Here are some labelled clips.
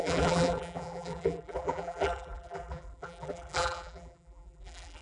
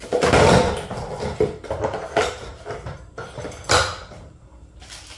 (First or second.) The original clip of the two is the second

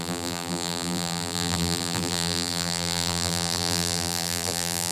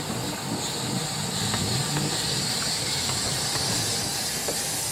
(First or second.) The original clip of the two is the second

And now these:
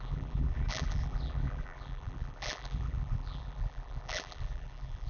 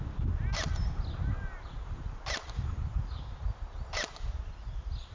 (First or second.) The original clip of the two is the second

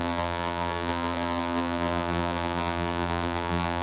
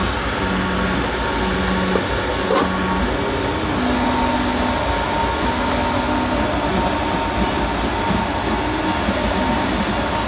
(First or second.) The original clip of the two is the second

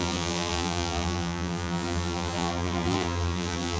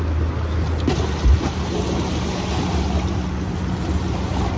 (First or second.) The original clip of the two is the second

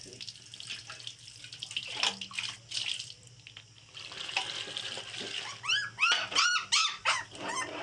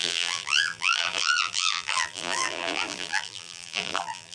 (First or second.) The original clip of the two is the first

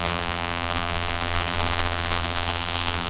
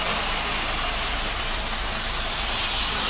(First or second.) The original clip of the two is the second